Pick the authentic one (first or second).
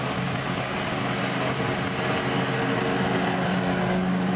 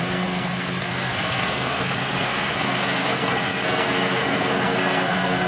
first